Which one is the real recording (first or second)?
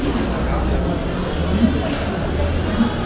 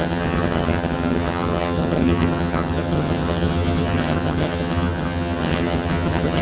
first